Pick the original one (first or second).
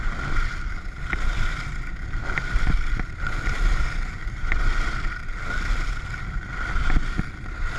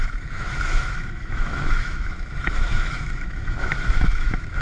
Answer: first